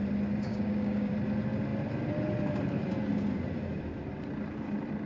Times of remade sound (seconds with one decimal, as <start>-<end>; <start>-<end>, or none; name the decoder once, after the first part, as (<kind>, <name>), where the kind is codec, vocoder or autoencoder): 0.5-1.1 (codec, DAC)